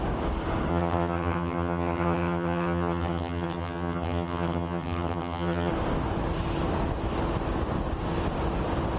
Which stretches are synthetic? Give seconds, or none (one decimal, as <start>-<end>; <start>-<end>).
0.7-5.7